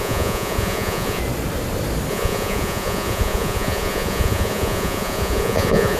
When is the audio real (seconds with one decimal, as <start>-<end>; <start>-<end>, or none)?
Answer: 1.2-2.1